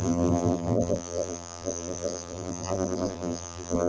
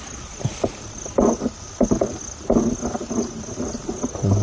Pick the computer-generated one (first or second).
first